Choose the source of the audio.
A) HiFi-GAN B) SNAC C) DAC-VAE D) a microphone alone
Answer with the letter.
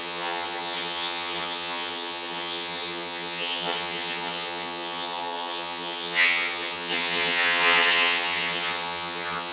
A